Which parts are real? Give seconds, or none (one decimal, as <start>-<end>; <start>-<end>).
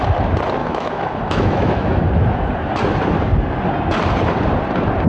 0.0-0.6; 2.0-5.1